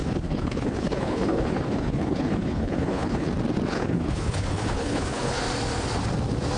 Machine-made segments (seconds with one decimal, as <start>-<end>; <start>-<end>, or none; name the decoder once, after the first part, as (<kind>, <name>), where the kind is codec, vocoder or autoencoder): 0.0-3.3 (codec, HILCodec); 3.7-5.4